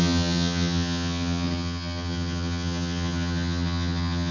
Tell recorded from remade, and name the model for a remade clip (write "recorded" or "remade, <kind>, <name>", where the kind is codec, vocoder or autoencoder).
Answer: remade, vocoder, HiFi-GAN